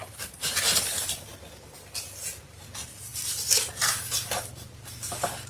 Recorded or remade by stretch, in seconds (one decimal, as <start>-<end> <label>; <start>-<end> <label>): 0.0-1.3 remade; 1.3-2.4 recorded; 2.4-3.1 remade; 3.1-3.7 recorded; 3.7-5.5 remade